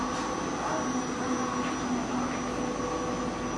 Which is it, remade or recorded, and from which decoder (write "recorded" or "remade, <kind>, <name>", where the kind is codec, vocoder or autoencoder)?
recorded